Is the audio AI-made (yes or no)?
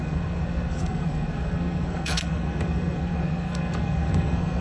yes